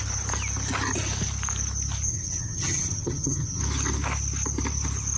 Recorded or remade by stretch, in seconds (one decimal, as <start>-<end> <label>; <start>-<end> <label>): 0.0-2.1 recorded; 2.1-3.6 remade; 3.6-5.2 recorded